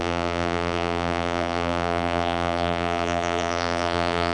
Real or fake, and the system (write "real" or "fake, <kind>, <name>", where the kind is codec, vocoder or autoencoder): fake, vocoder, BigVGAN v2